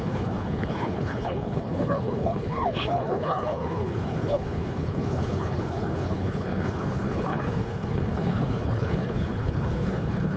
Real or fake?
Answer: fake